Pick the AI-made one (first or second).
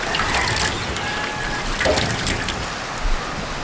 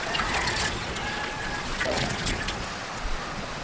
second